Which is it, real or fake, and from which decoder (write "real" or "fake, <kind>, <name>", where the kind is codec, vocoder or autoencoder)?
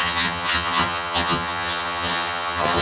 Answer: fake, vocoder, HiFi-GAN